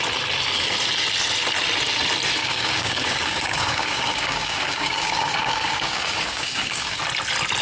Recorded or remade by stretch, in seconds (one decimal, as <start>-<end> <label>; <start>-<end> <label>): 0.0-2.4 recorded; 2.4-7.0 remade; 7.0-7.6 recorded